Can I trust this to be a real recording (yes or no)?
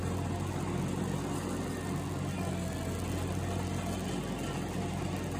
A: yes